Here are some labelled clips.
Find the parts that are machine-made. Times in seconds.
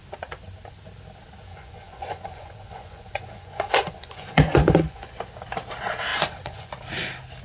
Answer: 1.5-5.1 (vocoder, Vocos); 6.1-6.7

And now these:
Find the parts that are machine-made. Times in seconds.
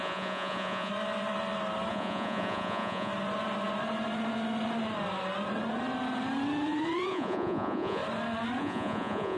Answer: 0.0-0.9 (vocoder, Vocos); 1.9-3.1; 7.1-8.0; 8.6-9.4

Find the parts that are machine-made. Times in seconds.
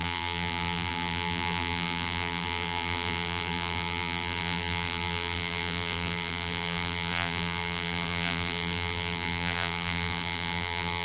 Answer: 0.0-11.0 (vocoder, BigVGAN v2)